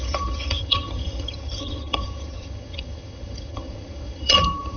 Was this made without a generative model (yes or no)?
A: no